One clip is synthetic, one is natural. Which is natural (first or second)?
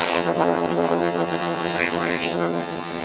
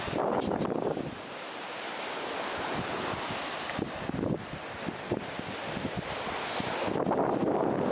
second